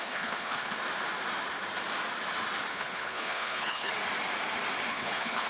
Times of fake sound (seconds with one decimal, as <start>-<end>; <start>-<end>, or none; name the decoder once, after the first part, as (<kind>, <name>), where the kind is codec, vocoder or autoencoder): 0.0-0.8 (codec, HILCodec); 2.7-3.9; 4.9-5.5